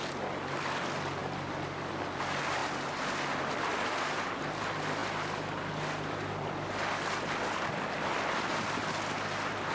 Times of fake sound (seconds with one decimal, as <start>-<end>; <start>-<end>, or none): none